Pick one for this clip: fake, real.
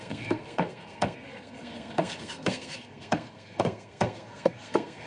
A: fake